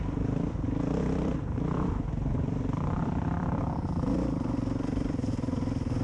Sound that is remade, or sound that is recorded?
remade